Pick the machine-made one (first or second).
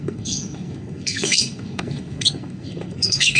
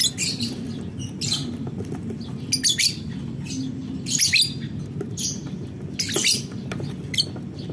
first